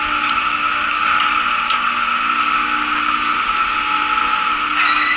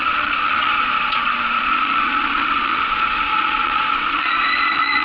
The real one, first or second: first